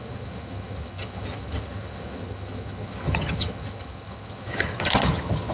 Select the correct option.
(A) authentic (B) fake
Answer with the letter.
B